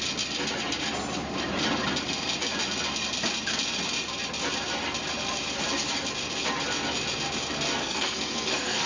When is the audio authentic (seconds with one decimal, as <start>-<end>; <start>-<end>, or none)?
0.0-7.8